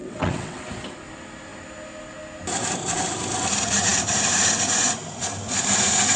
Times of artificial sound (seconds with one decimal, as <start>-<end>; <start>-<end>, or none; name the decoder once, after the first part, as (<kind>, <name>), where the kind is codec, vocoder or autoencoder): 0.0-0.6 (vocoder, WaveNeXt)